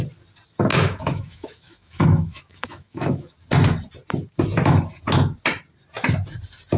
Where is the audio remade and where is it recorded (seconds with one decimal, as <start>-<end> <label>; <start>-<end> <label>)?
0.0-0.7 recorded; 0.7-3.3 remade; 3.3-6.8 recorded